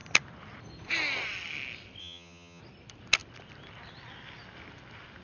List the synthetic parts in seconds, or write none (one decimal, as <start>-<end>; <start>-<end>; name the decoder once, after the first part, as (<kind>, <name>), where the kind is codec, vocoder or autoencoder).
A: 2.0-2.6 (vocoder, HiFi-GAN)